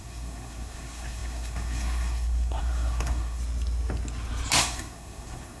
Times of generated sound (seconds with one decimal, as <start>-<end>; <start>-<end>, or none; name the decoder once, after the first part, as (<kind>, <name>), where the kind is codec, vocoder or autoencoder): 0.0-3.4 (codec, SNAC); 4.6-5.6